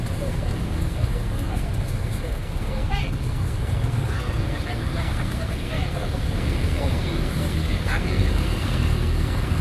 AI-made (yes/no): yes